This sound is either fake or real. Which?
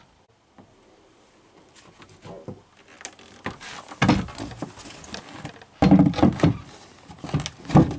real